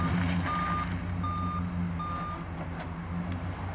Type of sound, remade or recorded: recorded